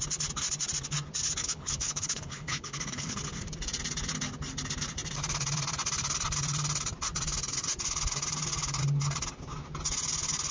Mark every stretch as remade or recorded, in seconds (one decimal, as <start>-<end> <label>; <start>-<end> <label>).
0.0-1.4 recorded; 1.4-3.2 remade; 3.2-10.5 recorded